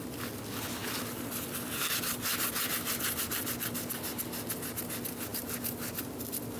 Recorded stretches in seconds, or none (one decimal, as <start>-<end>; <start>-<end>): 0.0-6.6